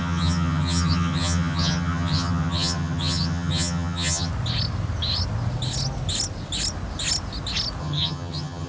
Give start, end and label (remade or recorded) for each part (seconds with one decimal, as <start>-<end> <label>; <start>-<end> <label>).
0.0-4.3 remade; 4.3-7.8 recorded; 7.8-8.7 remade